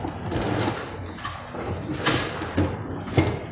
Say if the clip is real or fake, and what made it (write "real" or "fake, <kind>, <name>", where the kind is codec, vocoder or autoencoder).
real